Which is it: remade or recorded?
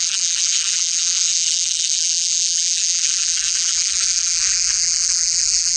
remade